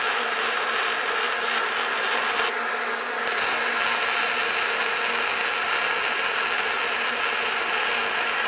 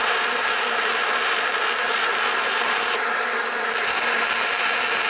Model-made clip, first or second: second